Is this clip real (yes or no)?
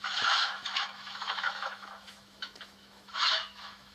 no